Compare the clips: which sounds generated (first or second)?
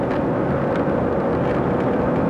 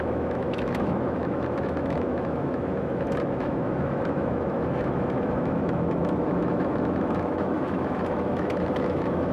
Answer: second